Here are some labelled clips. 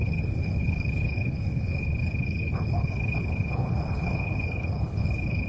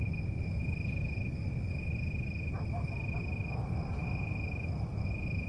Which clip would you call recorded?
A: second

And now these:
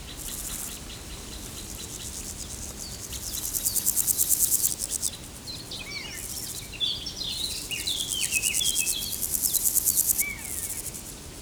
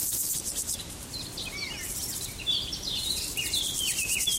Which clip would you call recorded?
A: first